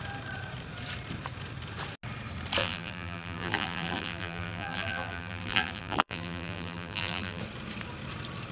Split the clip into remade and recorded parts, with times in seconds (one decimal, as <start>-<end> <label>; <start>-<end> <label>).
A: 0.0-2.6 recorded; 2.6-7.4 remade; 7.4-8.5 recorded